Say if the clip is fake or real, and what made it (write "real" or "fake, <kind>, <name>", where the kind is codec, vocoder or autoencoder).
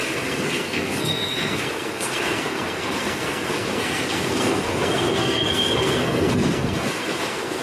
fake, codec, SNAC